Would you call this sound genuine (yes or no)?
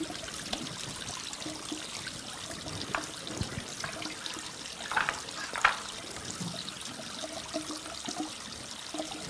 yes